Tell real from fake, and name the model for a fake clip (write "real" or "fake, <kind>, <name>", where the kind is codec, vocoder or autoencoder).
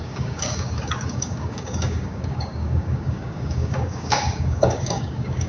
fake, codec, DAC